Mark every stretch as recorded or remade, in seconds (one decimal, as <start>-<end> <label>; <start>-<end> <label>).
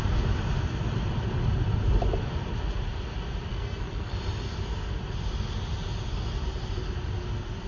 0.0-3.5 recorded; 3.5-4.1 remade; 4.1-7.7 recorded